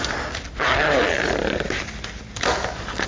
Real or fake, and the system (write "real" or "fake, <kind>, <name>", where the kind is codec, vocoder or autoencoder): real